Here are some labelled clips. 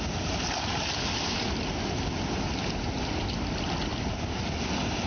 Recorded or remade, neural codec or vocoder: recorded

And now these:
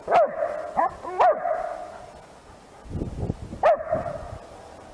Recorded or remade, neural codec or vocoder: recorded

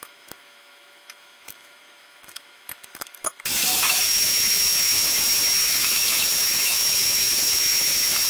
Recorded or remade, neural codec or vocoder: remade, autoencoder, DAC-VAE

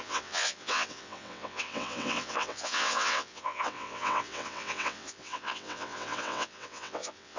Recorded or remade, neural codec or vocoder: remade, vocoder, WaveNeXt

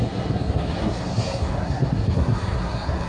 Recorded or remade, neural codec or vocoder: remade, codec, SNAC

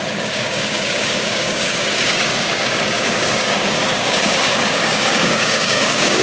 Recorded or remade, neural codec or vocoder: remade, codec, DAC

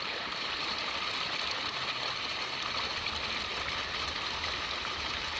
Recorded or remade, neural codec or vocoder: recorded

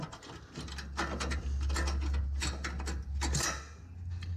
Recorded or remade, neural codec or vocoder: recorded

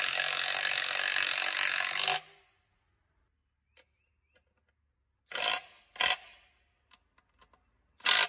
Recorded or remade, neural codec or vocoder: recorded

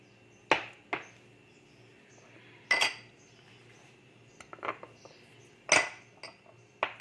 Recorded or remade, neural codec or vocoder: recorded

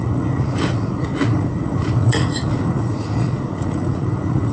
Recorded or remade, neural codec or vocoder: remade, vocoder, Vocos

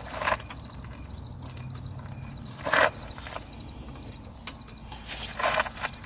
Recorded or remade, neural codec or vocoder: recorded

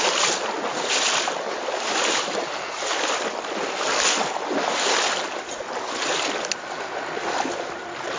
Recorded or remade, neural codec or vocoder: recorded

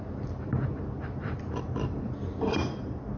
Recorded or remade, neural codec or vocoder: remade, vocoder, BigVGAN v2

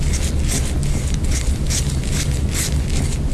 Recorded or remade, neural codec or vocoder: recorded